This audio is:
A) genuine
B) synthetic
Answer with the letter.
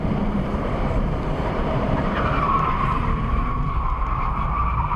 B